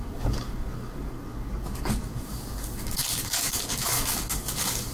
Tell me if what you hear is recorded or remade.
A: remade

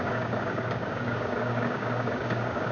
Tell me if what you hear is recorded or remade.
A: remade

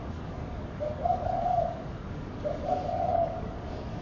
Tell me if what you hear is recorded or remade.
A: remade